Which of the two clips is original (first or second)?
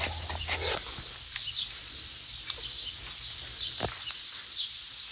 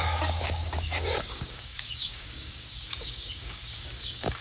first